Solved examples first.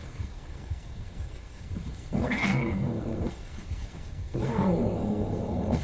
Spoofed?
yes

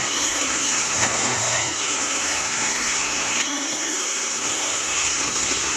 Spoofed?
yes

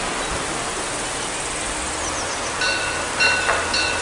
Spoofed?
no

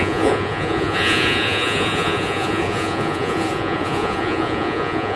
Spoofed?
yes